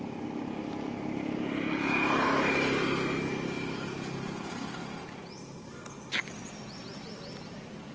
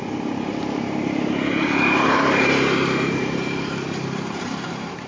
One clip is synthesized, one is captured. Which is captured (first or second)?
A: first